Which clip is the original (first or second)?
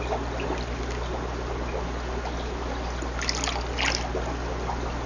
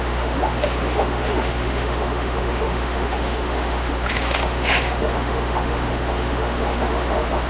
first